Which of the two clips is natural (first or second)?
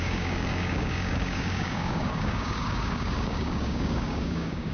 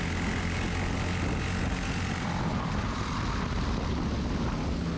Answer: second